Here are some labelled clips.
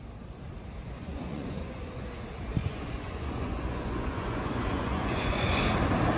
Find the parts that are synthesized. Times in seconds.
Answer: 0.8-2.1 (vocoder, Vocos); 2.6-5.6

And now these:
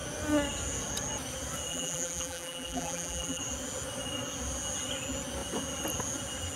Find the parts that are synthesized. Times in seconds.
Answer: 1.7-3.4 (vocoder, BigVGAN v2)

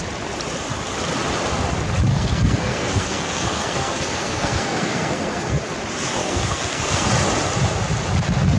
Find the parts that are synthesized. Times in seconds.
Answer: 2.1-5.6 (codec, SNAC); 6.2-7.1

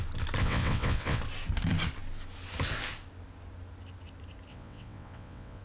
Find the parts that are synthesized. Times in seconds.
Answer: 0.4-1.2 (vocoder, WaveNeXt); 4.5-5.6

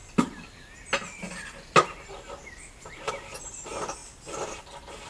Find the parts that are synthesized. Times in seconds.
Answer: none

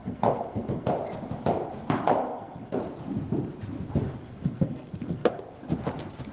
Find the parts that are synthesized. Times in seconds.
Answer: 0.0-0.9 (codec, SNAC); 2.2-2.8; 4.2-5.4

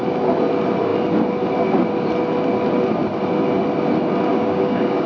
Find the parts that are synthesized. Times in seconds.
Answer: 4.3-5.1 (codec, DAC)